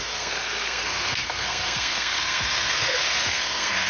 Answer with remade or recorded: remade